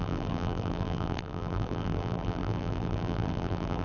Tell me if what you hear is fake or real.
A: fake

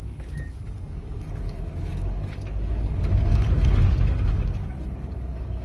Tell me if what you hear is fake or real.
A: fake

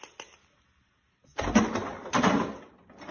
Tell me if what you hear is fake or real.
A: real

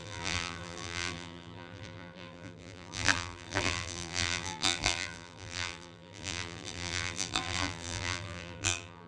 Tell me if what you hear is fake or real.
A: fake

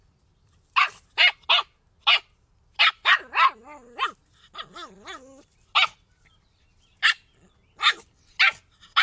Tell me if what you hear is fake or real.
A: real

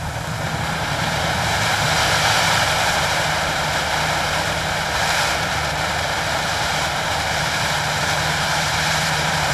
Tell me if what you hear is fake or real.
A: fake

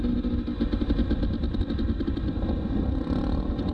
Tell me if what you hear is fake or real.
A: real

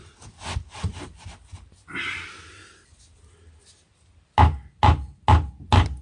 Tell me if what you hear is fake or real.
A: real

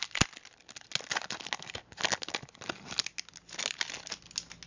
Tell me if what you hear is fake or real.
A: real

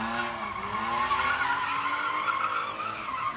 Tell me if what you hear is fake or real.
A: real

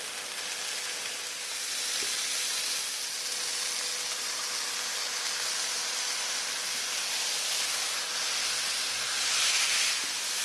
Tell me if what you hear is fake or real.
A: real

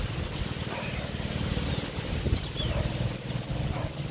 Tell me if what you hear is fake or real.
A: real